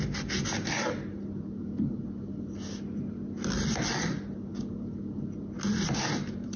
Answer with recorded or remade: recorded